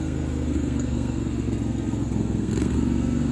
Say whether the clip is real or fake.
fake